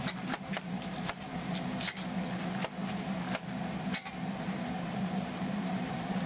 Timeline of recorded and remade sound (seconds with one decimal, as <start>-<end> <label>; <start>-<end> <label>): 0.0-1.3 remade; 1.3-4.3 recorded; 4.3-6.3 remade